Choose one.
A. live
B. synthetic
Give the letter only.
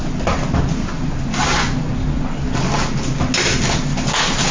A